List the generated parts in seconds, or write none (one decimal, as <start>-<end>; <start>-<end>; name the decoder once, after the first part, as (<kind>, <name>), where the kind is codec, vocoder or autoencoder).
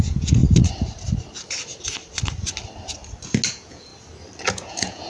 0.0-0.4 (vocoder, Vocos); 3.5-3.9; 4.5-5.1